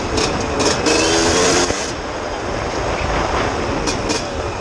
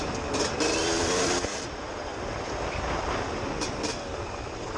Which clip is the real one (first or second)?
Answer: first